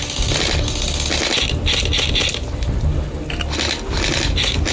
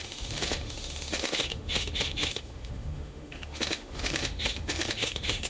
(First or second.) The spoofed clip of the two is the second